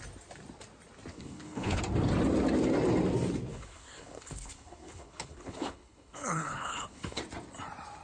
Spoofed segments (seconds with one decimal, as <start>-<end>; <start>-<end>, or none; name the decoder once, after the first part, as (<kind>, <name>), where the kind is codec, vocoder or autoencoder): 1.1-1.8 (codec, HILCodec); 3.5-7.2

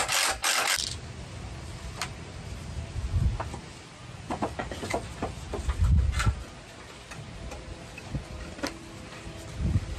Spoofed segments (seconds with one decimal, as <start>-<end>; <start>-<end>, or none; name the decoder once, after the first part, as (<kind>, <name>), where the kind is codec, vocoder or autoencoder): 4.0-4.6 (vocoder, Vocos)

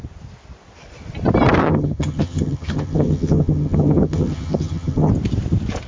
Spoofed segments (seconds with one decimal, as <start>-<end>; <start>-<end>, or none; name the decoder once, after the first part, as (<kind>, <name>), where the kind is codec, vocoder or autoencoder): 1.6-5.1 (vocoder, HiFi-GAN)